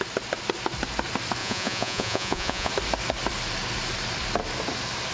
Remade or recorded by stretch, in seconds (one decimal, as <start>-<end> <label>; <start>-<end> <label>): 0.0-1.4 recorded; 1.4-2.7 remade; 2.7-5.1 recorded